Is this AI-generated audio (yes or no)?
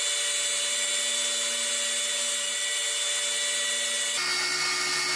no